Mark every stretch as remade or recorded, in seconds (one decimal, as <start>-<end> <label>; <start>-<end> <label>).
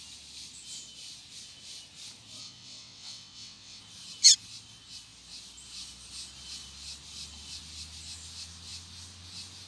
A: 0.0-2.4 recorded; 2.4-3.8 remade; 3.8-9.7 recorded